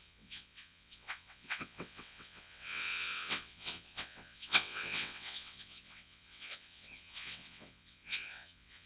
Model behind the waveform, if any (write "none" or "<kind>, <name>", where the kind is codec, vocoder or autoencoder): vocoder, WaveNeXt